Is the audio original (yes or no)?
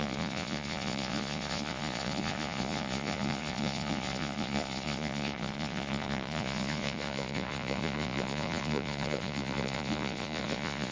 no